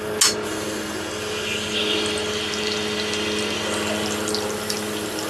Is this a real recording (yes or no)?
yes